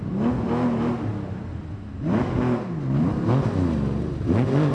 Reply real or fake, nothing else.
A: real